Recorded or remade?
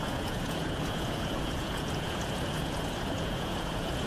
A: remade